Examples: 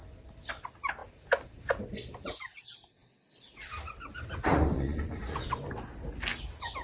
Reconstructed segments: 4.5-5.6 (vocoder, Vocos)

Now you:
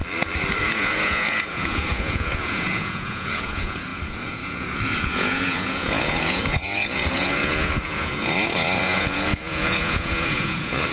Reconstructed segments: 0.6-10.9 (vocoder, Vocos)